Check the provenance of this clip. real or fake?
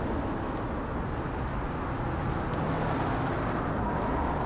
real